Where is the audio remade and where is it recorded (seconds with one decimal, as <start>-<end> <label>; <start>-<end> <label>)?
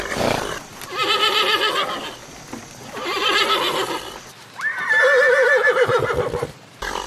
0.0-7.1 recorded